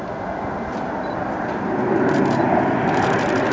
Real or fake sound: real